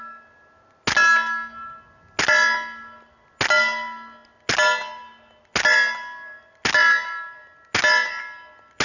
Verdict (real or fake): real